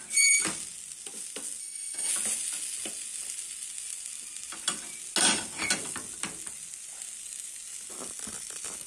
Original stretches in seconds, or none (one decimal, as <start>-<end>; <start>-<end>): 0.0-1.6; 2.1-8.9